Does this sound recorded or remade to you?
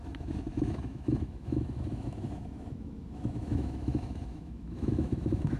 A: remade